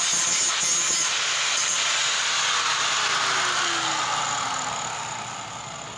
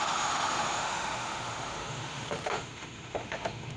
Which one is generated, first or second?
second